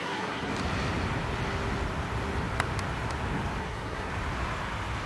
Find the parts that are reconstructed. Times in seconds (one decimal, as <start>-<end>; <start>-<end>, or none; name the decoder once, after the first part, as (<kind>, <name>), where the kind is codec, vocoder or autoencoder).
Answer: 0.0-0.5 (codec, SNAC); 3.6-4.1